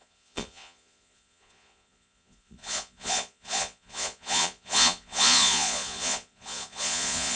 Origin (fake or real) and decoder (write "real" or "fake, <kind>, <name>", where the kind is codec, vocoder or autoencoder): fake, vocoder, Vocos